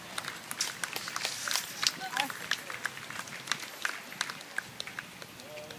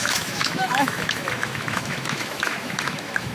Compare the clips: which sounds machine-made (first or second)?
second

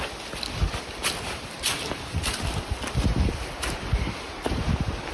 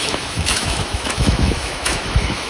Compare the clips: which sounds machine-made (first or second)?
second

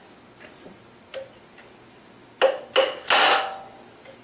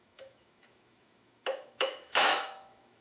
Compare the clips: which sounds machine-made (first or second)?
second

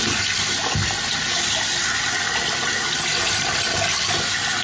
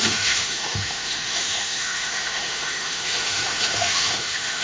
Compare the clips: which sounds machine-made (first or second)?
second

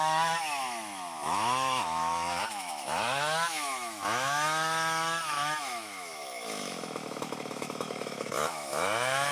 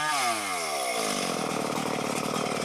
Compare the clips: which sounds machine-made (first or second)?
first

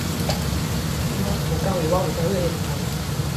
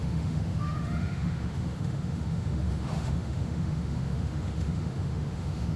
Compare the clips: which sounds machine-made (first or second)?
second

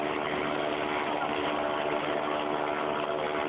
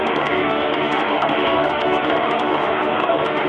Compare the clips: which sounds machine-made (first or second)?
second